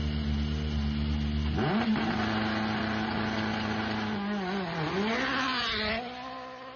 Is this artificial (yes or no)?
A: no